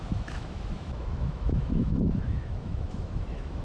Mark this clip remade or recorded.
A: remade